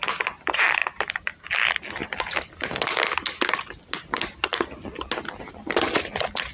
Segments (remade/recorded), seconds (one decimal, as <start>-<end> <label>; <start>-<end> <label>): 0.0-6.5 recorded